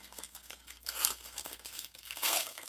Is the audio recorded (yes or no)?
no